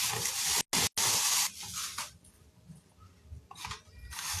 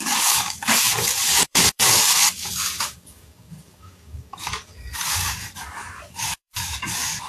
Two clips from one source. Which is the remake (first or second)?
second